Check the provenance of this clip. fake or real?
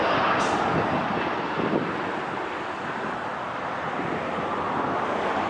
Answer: real